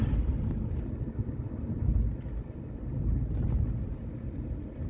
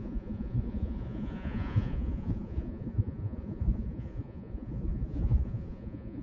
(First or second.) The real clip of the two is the first